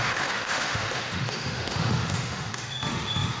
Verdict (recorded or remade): remade